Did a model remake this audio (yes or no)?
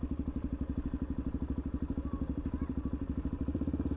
yes